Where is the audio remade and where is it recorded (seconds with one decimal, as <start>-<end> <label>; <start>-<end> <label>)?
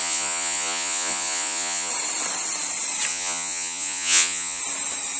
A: 0.0-1.9 remade; 1.9-3.1 recorded; 3.1-4.6 remade; 4.6-5.2 recorded